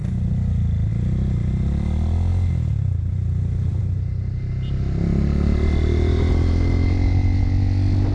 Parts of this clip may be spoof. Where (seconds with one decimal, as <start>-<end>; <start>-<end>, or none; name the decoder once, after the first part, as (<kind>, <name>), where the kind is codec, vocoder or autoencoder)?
none